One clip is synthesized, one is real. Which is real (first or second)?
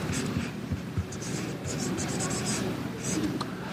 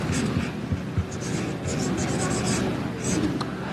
second